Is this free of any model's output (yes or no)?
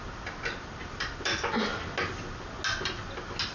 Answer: yes